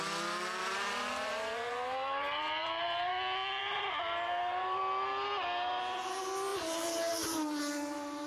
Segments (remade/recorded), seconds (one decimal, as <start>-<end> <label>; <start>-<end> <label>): 0.0-0.6 recorded; 0.6-3.1 remade; 3.1-3.6 recorded; 3.6-4.8 remade; 4.8-6.5 recorded; 6.5-7.6 remade; 7.6-8.3 recorded